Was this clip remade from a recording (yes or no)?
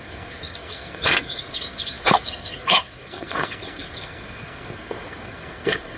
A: yes